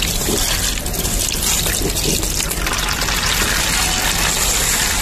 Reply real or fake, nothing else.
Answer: real